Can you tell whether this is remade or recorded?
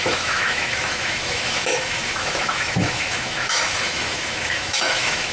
remade